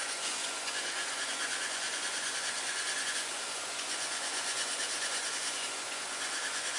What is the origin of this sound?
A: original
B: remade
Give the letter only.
B